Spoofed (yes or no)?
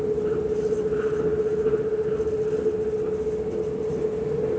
no